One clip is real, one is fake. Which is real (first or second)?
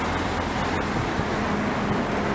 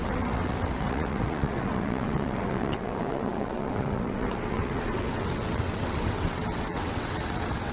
first